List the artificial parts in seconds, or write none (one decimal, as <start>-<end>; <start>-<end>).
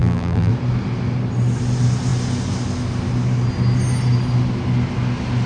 0.0-0.5